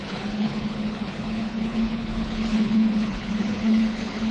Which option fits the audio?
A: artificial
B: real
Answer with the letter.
A